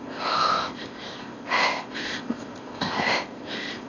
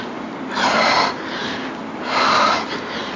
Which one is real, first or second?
second